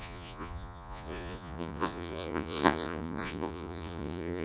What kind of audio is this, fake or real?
fake